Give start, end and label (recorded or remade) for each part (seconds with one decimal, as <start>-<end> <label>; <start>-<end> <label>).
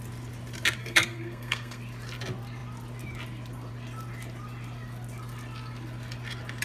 0.0-0.8 recorded; 0.8-1.8 remade; 1.8-6.6 recorded